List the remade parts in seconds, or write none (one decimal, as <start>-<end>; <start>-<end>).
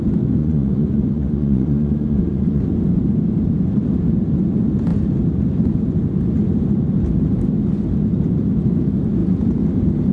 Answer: 0.4-2.6